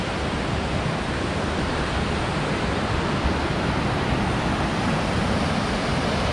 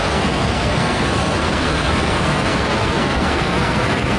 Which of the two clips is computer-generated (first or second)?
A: second